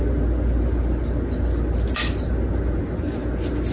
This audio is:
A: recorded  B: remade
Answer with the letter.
A